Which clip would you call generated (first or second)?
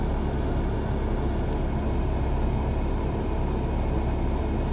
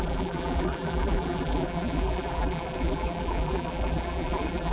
second